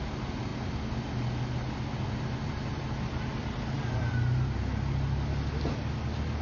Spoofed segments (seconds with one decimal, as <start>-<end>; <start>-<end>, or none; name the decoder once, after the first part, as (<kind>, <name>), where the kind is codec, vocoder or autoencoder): none